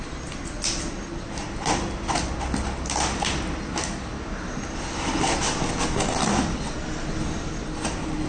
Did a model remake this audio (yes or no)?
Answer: no